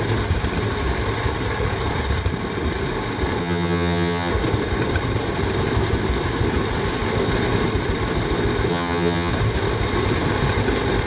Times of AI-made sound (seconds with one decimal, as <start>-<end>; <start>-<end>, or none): 3.4-4.3; 8.7-9.3